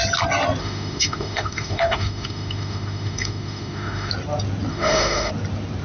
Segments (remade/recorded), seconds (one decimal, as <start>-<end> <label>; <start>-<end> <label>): 0.0-0.6 recorded; 0.6-4.1 remade; 4.1-4.7 recorded; 4.7-5.3 remade; 5.3-5.8 recorded